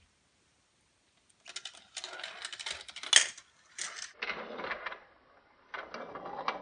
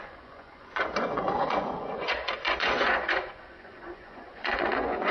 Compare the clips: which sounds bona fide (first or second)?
first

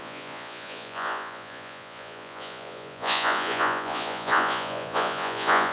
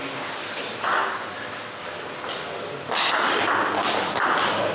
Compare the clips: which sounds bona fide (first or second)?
second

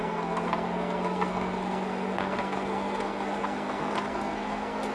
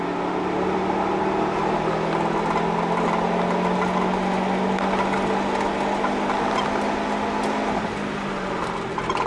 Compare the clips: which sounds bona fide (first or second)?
second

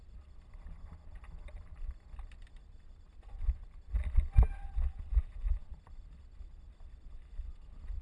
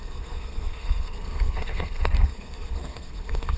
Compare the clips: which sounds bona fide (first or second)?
first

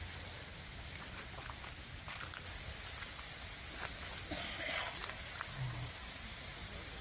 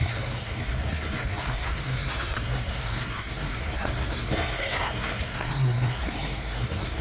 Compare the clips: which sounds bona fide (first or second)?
first